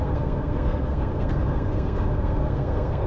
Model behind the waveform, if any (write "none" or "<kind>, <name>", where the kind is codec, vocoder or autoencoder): codec, SNAC